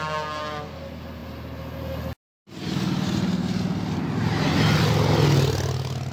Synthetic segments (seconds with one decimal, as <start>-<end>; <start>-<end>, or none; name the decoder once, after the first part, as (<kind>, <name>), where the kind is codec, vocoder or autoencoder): none